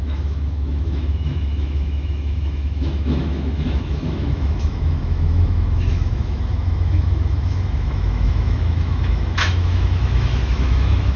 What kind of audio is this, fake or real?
fake